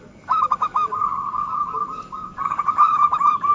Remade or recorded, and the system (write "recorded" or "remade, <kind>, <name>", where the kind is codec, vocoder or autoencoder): remade, codec, DAC